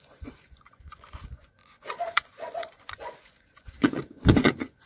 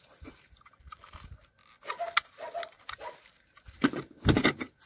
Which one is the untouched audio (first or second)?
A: second